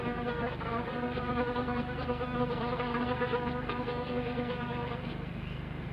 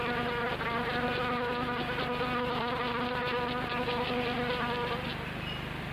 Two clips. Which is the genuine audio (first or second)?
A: second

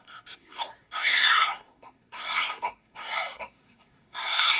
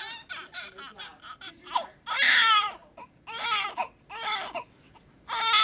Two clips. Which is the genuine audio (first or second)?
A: second